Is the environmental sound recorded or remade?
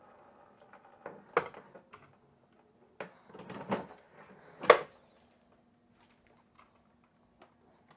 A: recorded